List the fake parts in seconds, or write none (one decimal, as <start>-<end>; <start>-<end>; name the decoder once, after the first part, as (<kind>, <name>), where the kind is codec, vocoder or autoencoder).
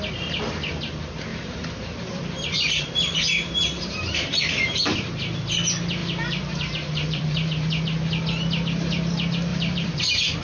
1.3-5.1 (vocoder, BigVGAN v2); 6.0-7.7; 9.5-10.4